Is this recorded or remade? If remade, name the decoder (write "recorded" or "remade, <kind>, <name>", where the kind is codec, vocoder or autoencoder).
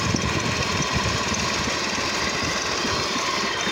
remade, vocoder, BigVGAN v2